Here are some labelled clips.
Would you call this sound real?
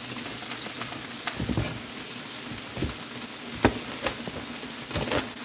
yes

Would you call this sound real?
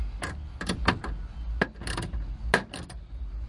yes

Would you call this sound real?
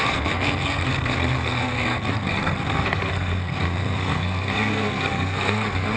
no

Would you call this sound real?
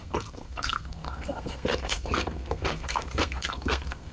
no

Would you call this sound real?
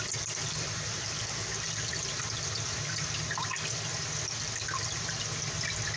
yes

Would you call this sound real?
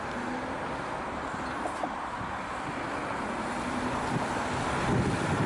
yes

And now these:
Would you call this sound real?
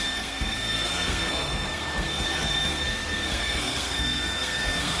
no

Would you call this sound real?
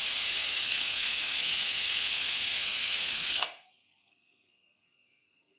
no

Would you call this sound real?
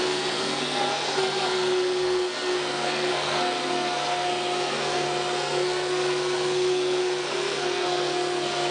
no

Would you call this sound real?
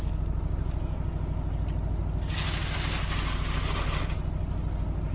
yes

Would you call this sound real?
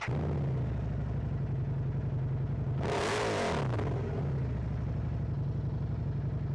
yes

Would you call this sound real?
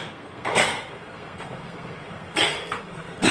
no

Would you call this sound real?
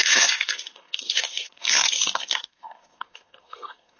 no